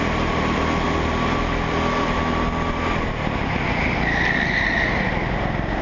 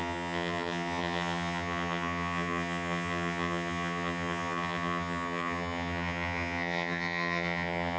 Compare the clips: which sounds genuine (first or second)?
first